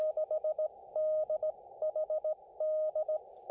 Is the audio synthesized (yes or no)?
no